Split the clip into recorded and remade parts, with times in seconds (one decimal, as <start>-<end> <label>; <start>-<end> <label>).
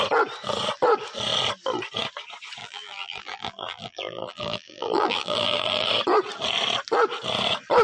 0.0-2.6 recorded; 2.6-5.9 remade; 5.9-7.8 recorded